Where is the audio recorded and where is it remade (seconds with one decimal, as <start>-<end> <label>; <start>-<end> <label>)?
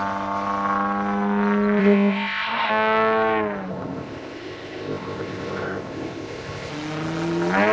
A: 0.0-1.8 recorded; 1.8-2.7 remade; 2.7-3.7 recorded; 3.7-6.7 remade; 6.7-7.7 recorded